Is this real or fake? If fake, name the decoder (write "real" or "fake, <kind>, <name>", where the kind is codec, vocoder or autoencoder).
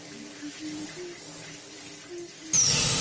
real